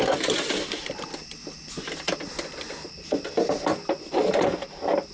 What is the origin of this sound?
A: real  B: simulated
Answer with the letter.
A